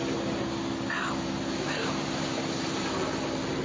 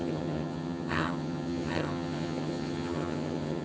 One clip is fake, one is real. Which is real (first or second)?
first